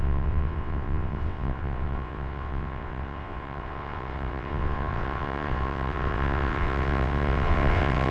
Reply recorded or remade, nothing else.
remade